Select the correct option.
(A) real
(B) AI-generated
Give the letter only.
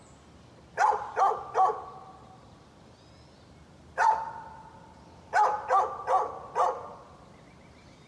A